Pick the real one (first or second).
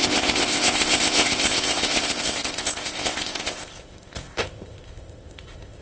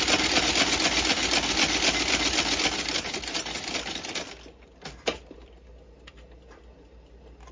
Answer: second